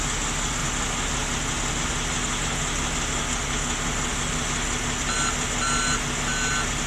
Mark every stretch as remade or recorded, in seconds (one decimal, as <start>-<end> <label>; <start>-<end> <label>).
0.0-6.9 recorded